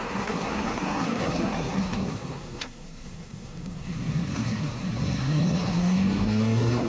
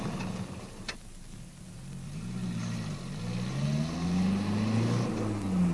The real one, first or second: second